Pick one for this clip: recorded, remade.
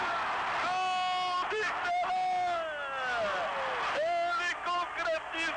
recorded